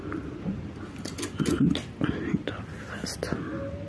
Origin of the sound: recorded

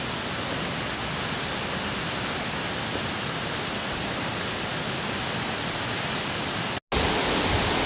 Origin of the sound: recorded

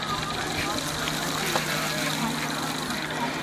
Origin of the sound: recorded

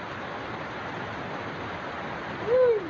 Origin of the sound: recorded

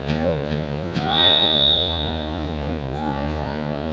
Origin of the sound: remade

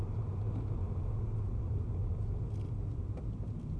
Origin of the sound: recorded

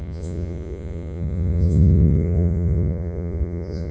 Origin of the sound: remade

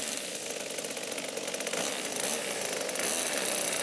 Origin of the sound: recorded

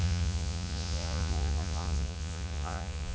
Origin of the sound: remade